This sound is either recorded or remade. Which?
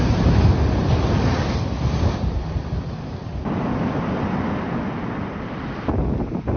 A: recorded